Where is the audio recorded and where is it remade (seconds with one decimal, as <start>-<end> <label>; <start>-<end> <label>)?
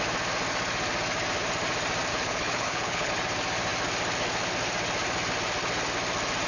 0.0-2.1 recorded; 2.1-3.1 remade; 3.1-6.5 recorded